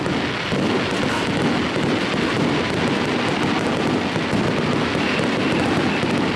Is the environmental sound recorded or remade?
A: recorded